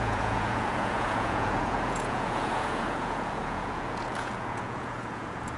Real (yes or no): no